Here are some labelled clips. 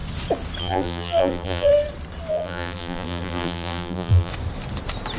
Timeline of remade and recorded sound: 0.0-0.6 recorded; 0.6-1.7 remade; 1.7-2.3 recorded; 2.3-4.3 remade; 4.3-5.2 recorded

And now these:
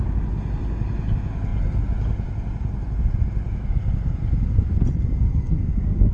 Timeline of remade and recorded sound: 0.0-5.3 recorded; 5.3-6.1 remade

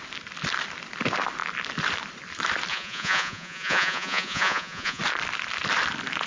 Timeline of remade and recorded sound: 0.0-2.7 recorded; 2.7-5.0 remade; 5.0-6.3 recorded

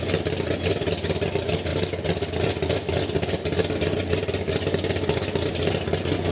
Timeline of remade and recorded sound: 0.0-6.3 recorded